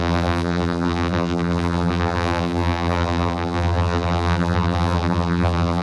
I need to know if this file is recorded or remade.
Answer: remade